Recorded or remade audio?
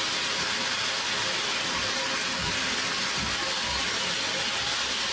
recorded